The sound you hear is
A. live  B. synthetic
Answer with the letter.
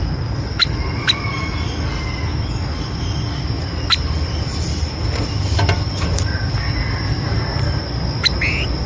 A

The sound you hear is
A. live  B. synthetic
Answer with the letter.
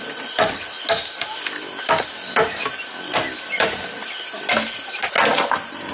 A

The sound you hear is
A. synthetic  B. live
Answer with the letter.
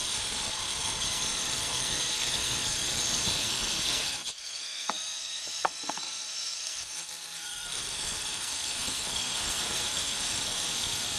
A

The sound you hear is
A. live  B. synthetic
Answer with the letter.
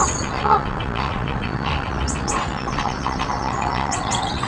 B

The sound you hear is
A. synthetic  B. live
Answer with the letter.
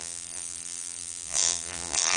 A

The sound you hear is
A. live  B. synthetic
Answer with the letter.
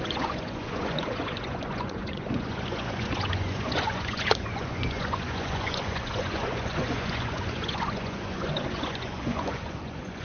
B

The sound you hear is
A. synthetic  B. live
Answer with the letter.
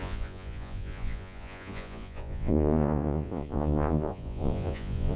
A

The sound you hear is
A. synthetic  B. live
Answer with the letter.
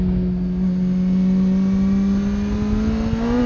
B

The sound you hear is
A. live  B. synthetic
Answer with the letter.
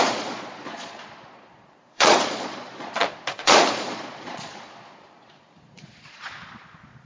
B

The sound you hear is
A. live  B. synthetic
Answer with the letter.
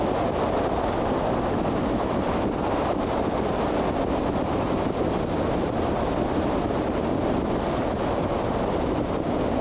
A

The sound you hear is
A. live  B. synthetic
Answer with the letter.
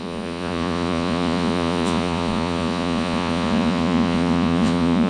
B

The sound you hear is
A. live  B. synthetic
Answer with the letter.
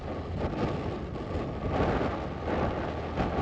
A